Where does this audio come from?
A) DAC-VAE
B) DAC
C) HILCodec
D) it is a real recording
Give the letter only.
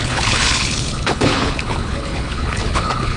C